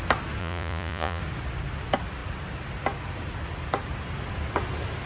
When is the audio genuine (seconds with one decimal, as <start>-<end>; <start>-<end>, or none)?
0.0-0.4; 1.2-5.1